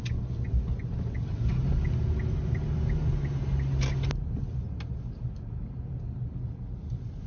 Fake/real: real